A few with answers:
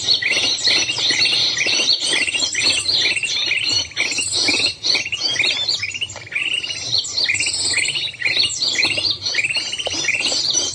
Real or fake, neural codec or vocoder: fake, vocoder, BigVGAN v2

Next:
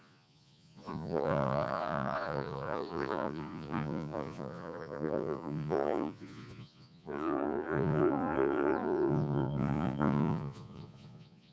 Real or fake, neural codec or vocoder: fake, vocoder, Vocos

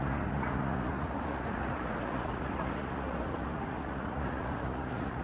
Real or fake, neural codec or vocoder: fake, vocoder, Vocos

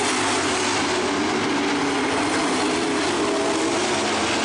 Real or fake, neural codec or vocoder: real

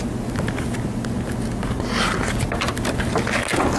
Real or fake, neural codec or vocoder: real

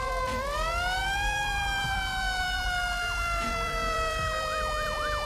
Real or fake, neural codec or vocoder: fake, vocoder, BigVGAN v2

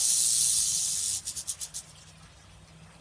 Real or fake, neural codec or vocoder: real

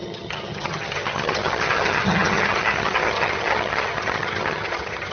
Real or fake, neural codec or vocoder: fake, vocoder, HiFi-GAN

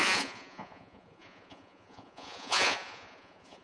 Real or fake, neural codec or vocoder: fake, vocoder, Vocos